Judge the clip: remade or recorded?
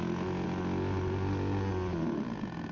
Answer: recorded